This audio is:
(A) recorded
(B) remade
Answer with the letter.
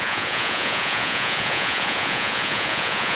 B